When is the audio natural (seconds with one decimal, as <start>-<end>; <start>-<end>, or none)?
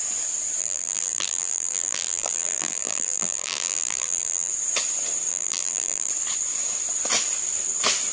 0.0-0.6; 4.5-5.3; 6.1-8.1